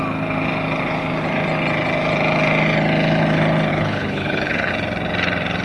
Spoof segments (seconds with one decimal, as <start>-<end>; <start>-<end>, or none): 3.7-4.7